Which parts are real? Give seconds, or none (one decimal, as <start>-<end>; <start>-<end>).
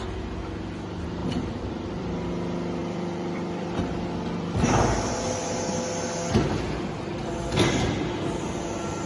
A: 0.0-1.2; 2.2-2.8; 5.5-9.1